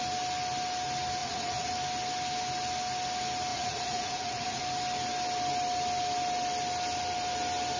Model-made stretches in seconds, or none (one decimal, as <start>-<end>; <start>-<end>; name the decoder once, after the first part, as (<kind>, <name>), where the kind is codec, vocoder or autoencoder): 1.2-1.7 (vocoder, Vocos); 3.5-4.6